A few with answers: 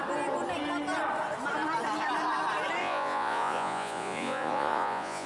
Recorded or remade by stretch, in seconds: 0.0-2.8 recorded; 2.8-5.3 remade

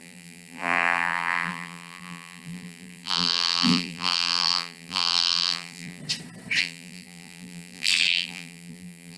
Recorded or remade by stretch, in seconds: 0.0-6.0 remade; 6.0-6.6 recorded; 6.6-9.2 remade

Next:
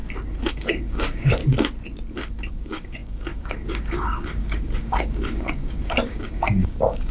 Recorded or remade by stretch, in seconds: 0.0-0.5 recorded; 0.5-1.4 remade; 1.4-2.5 recorded; 2.5-7.1 remade

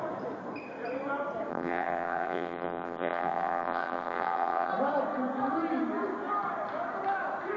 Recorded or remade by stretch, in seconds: 0.0-1.5 recorded; 1.5-4.7 remade; 4.7-7.6 recorded

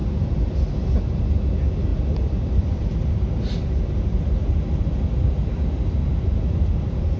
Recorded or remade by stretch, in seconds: 0.0-1.9 recorded; 1.9-4.8 remade; 4.8-7.2 recorded

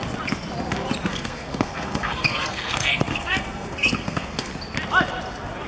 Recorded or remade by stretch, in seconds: 0.0-1.1 recorded; 1.1-4.5 remade; 4.5-5.7 recorded

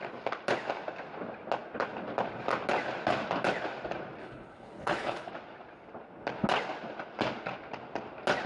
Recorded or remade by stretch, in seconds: 0.0-4.2 recorded; 4.2-5.3 remade; 5.3-8.5 recorded